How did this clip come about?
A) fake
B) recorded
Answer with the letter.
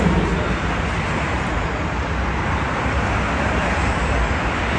B